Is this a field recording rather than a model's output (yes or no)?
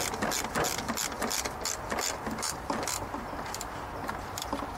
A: yes